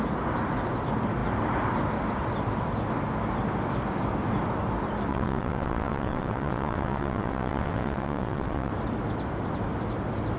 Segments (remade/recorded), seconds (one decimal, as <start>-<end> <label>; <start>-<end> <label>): 0.0-5.1 recorded; 5.1-8.7 remade; 8.7-10.4 recorded